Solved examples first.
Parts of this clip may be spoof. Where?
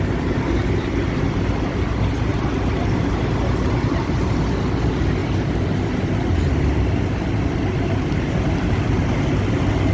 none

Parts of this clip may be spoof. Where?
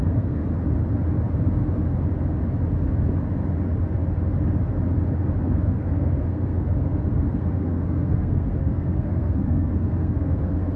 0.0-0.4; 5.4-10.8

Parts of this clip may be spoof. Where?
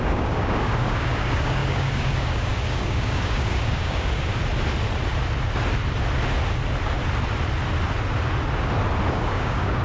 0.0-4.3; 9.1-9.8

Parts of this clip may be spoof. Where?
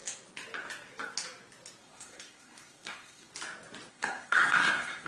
1.8-3.3; 3.9-5.1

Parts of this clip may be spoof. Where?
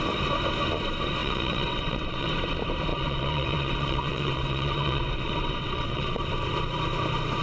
1.2-2.3; 2.9-6.2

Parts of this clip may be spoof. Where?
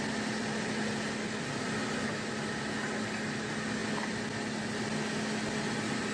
none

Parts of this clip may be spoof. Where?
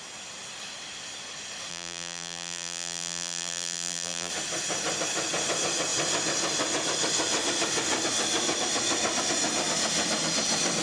1.7-4.3